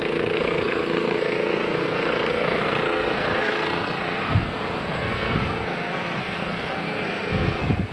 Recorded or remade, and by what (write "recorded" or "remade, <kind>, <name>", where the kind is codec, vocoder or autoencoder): remade, codec, SNAC